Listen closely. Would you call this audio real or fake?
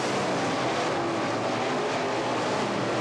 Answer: real